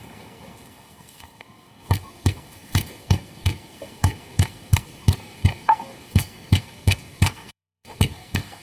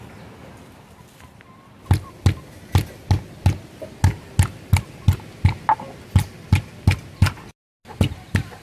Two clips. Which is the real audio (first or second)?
second